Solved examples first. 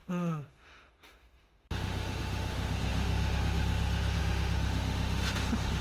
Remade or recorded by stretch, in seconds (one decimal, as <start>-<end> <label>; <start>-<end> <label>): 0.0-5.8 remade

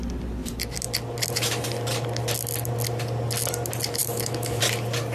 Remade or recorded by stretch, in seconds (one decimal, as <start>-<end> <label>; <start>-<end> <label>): 0.0-4.0 recorded; 4.0-4.6 remade; 4.6-5.1 recorded

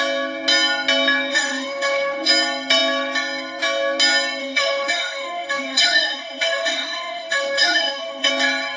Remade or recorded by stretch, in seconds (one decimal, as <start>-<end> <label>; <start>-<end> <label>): 0.0-1.3 recorded; 1.3-2.3 remade; 2.3-4.4 recorded; 4.4-8.3 remade; 8.3-8.8 recorded

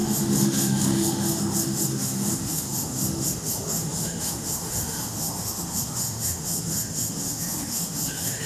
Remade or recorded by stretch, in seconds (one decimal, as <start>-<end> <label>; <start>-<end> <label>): 0.0-8.5 remade

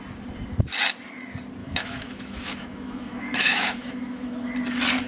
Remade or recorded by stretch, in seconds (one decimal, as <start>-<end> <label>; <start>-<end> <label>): 0.0-1.6 recorded; 1.6-4.5 remade; 4.5-5.1 recorded